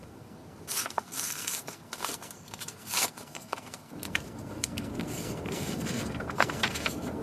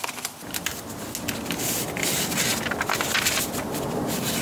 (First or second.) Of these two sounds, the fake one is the first